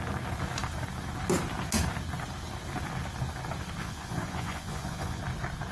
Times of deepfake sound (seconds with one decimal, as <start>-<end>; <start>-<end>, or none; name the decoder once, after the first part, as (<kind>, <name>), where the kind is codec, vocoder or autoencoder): 3.8-5.2 (vocoder, Vocos)

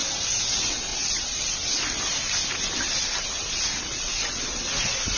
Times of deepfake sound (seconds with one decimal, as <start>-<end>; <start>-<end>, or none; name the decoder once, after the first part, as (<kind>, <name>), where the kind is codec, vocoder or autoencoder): 0.5-0.9 (vocoder, Vocos); 3.8-5.2